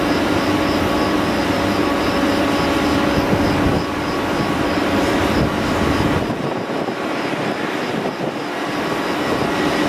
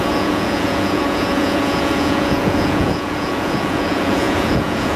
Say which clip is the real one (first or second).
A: first